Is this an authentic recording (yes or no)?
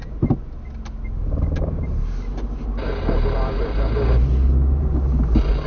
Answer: yes